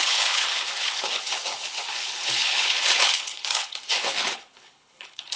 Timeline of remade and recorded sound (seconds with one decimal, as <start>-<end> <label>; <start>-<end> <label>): 0.0-5.4 remade

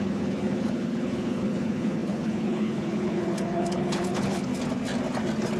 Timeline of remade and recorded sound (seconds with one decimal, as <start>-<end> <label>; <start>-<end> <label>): 0.0-4.5 remade; 4.5-5.6 recorded

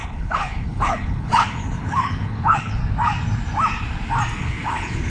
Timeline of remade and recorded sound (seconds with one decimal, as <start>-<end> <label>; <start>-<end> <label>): 0.0-2.8 remade; 2.8-4.4 recorded; 4.4-5.1 remade

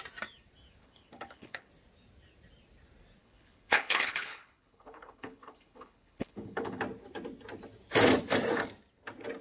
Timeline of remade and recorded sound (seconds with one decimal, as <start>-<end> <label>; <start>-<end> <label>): 0.0-0.8 recorded; 0.8-1.7 remade; 1.7-3.2 recorded; 3.2-6.8 remade; 6.8-9.4 recorded

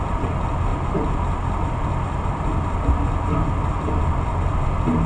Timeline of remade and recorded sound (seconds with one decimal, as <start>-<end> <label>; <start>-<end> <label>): 0.0-5.1 recorded